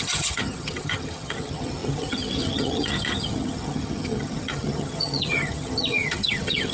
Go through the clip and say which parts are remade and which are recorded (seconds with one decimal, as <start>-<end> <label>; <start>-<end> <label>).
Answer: 0.0-6.7 remade

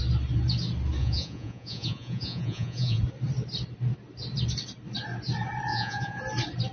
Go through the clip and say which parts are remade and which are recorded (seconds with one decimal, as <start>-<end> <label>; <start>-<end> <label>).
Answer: 0.0-1.0 recorded; 1.0-3.0 remade; 3.0-5.7 recorded; 5.7-6.2 remade; 6.2-6.7 recorded

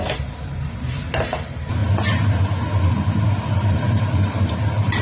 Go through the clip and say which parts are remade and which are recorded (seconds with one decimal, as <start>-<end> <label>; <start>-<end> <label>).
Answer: 0.0-1.8 remade; 1.8-3.7 recorded; 3.7-5.0 remade

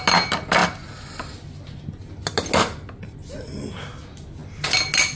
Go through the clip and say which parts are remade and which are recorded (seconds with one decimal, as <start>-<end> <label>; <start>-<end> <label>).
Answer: 0.0-5.2 recorded

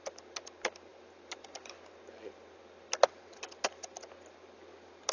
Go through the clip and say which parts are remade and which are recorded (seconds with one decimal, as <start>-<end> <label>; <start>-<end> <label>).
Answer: 0.0-5.1 recorded

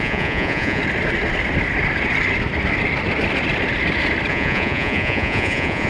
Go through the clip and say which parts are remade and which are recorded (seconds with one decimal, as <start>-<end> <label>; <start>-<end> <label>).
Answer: 0.0-0.8 remade; 0.8-4.3 recorded; 4.3-5.9 remade

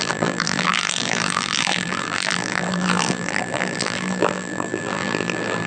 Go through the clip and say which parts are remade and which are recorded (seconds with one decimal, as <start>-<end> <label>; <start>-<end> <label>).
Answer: 0.0-5.7 remade

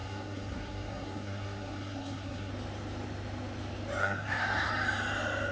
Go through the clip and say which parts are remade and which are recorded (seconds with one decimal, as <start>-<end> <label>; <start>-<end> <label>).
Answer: 0.0-2.5 remade; 2.5-4.0 recorded; 4.0-4.7 remade; 4.7-5.5 recorded